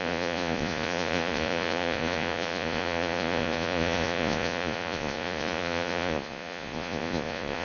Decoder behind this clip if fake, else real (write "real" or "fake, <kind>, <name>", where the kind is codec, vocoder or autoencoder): fake, vocoder, Vocos